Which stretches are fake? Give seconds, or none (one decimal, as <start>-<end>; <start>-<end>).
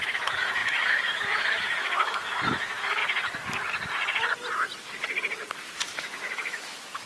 0.0-3.0; 5.6-7.1